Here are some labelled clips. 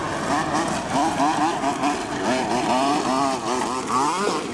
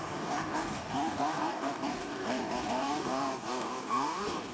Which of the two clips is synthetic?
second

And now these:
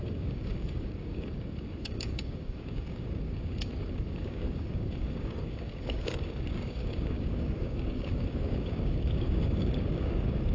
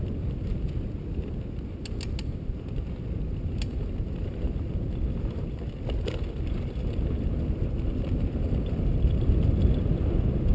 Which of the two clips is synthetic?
first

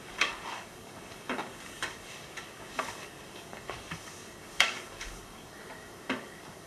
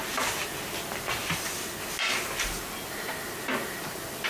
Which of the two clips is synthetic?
first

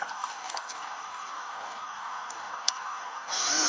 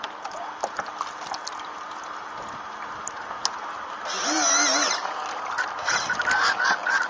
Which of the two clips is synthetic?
first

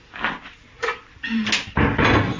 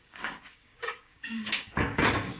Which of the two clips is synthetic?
second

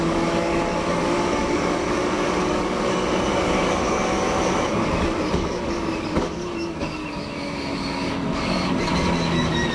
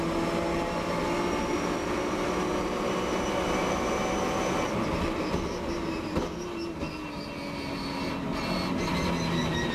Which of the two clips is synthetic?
first